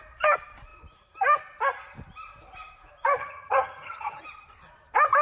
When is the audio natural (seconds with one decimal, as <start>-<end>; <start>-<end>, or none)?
0.0-3.2; 4.2-5.2